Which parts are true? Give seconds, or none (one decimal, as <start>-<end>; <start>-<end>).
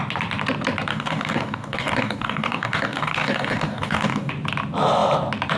0.0-0.9; 4.3-5.6